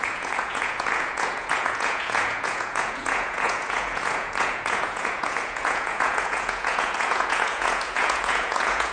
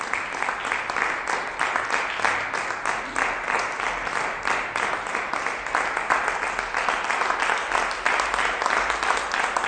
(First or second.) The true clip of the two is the second